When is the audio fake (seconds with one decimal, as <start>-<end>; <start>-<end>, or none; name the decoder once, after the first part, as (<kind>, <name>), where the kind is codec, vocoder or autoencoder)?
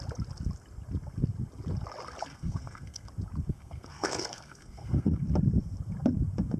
2.3-3.1 (codec, SNAC); 3.5-5.2